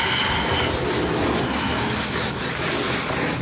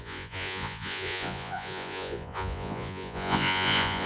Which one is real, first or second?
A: first